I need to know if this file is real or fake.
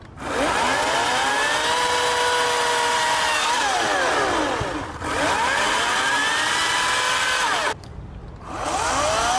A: real